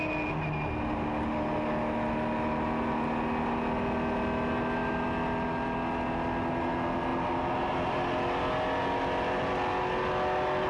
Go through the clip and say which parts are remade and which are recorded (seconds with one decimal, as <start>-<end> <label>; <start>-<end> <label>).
0.0-10.7 recorded